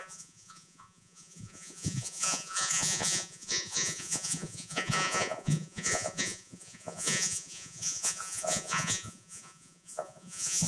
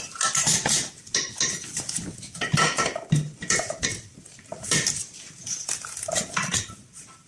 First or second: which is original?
second